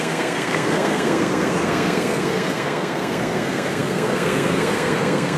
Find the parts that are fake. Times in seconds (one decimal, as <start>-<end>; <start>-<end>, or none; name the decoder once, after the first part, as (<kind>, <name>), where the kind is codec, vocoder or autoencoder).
0.0-5.4 (codec, SNAC)